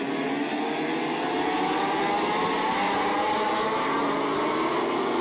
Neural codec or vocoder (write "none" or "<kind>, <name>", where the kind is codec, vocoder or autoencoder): none